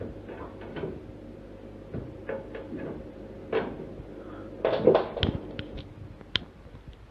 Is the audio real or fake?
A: real